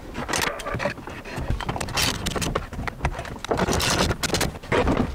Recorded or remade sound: recorded